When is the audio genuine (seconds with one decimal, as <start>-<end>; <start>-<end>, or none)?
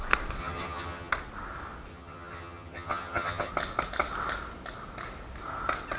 0.0-0.4; 1.1-1.9; 3.5-6.0